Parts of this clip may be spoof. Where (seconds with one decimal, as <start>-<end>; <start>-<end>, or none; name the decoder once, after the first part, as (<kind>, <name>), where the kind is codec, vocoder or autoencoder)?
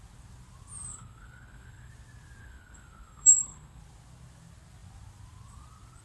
0.9-1.9 (codec, HILCodec); 2.4-3.8